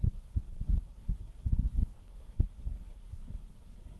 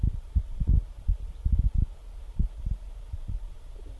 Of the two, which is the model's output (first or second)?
first